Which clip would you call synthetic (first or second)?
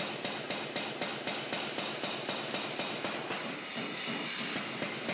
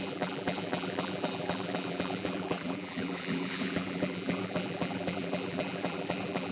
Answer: second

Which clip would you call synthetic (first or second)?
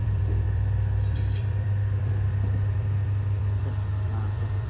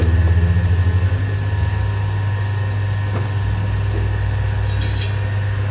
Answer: first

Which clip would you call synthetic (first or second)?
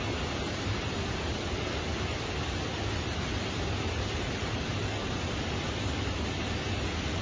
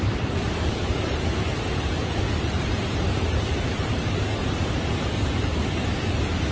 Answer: second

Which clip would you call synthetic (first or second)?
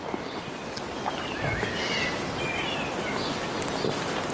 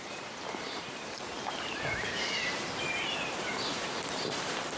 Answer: second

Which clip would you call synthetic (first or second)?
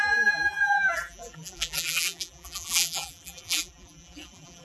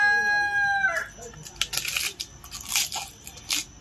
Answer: first